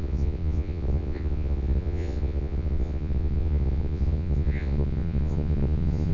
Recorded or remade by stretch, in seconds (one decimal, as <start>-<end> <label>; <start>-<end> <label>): 0.0-6.1 remade